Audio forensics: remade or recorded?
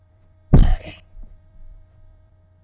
remade